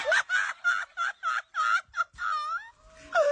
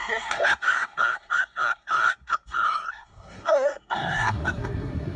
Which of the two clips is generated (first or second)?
second